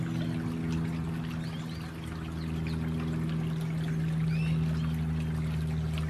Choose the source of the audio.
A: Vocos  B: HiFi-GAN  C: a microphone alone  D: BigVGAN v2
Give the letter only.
C